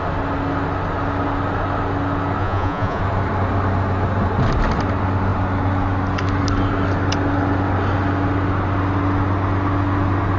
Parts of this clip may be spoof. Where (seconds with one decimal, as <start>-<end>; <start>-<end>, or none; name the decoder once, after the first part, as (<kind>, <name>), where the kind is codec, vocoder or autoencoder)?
2.4-3.0 (vocoder, Vocos)